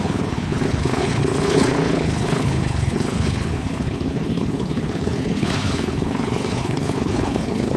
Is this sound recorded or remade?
remade